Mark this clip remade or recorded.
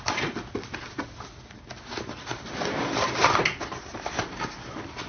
recorded